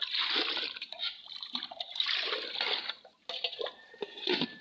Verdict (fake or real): real